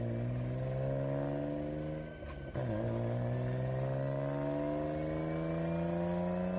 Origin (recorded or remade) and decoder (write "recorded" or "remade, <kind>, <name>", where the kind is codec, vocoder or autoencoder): recorded